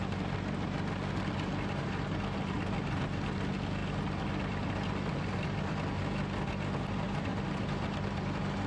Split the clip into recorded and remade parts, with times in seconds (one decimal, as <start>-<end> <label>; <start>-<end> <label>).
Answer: 0.0-8.7 recorded